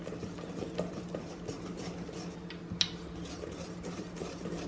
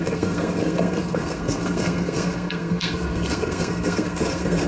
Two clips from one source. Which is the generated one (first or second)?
second